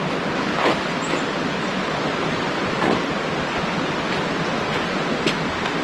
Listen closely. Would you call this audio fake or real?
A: real